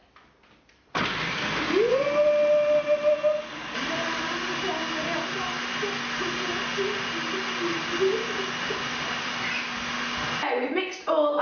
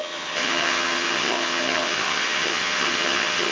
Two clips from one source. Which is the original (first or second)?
first